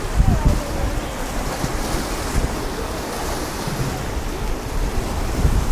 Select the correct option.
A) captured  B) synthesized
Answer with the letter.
A